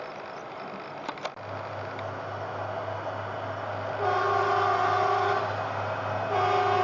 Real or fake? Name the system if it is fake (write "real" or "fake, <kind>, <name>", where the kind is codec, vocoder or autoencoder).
real